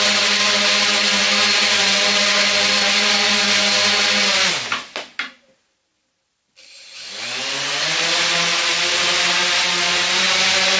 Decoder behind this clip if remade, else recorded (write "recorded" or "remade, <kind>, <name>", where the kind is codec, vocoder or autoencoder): recorded